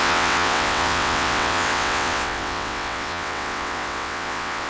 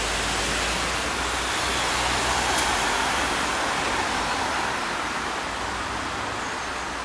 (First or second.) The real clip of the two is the second